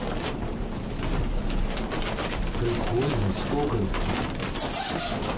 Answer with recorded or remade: recorded